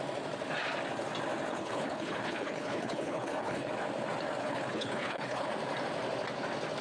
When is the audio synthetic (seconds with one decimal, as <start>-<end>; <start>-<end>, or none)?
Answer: 1.5-3.7; 4.4-5.5